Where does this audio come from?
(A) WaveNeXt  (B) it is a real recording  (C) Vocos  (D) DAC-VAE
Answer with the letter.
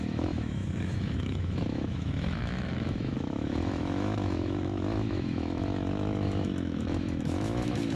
D